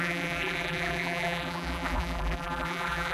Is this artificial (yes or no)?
yes